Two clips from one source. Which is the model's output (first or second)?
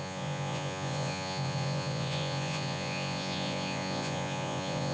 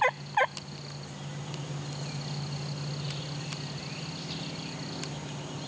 first